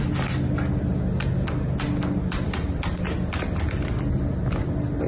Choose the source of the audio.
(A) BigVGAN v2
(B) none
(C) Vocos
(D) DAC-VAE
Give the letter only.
B